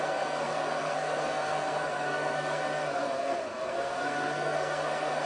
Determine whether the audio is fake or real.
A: fake